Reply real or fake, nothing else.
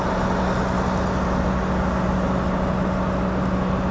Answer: real